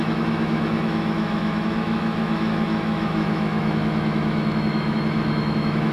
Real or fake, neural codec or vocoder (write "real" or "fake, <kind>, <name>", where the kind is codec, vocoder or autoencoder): fake, autoencoder, DAC-VAE